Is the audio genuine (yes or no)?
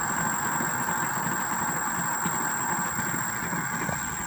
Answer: yes